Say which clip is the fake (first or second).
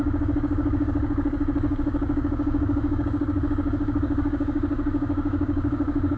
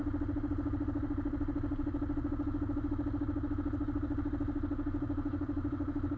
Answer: first